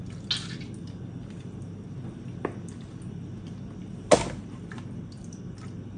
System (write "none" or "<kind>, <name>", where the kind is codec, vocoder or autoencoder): none